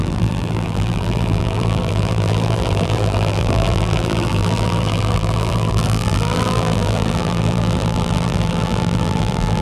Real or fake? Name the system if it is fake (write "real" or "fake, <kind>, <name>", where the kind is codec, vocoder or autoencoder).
fake, vocoder, BigVGAN v2